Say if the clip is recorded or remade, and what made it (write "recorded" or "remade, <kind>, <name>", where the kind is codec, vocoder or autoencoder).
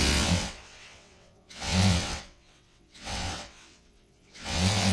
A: remade, vocoder, WaveNeXt